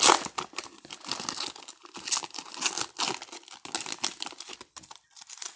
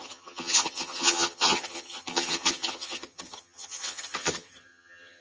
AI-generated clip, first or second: second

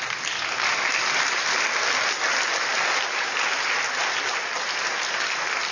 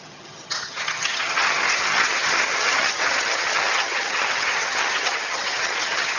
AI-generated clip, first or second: second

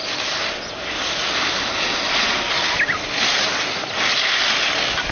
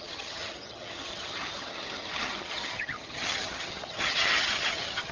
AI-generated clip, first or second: second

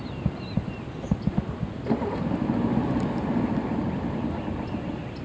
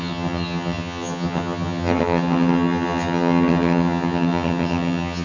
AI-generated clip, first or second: second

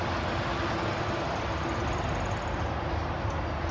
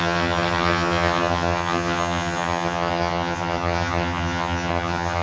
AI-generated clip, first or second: second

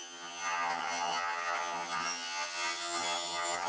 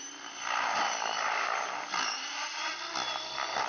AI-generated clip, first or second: first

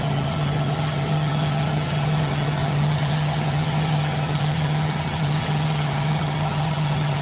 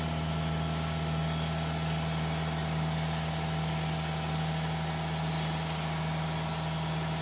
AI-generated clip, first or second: first